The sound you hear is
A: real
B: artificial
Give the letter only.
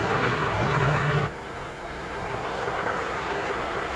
B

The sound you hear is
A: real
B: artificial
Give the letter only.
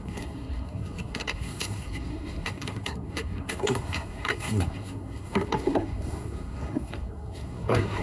B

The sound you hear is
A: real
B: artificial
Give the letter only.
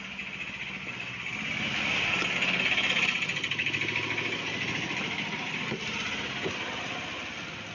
A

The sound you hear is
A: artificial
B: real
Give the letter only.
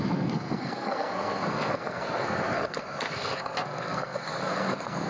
A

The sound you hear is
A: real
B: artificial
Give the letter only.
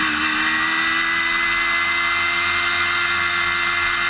A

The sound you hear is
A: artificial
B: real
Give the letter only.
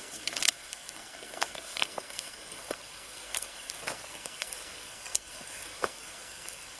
A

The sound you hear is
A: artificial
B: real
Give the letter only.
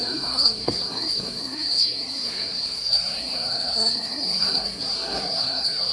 A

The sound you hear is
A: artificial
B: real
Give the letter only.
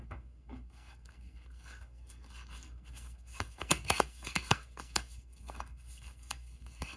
A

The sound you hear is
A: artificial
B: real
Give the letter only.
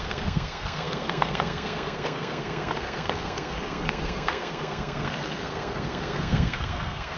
A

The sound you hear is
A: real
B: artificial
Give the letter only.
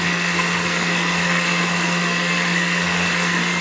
B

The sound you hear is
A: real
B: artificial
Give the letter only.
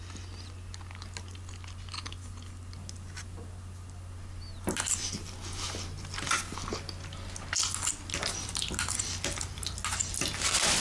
A